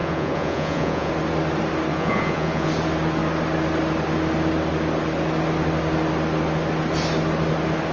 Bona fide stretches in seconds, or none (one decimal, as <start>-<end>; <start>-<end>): 1.1-1.9; 2.7-7.9